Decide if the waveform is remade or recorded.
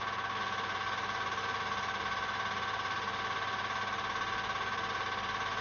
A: recorded